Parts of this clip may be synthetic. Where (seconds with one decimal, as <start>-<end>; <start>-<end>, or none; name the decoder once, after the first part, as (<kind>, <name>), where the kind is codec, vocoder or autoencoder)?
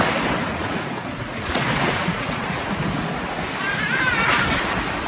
0.4-2.8 (vocoder, Vocos)